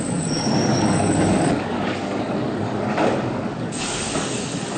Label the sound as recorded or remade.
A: remade